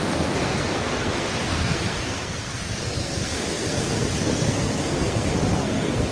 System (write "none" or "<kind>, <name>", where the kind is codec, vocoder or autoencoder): codec, SNAC